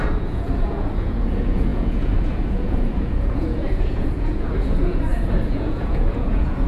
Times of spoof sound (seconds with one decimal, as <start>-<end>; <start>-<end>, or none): 0.0-6.7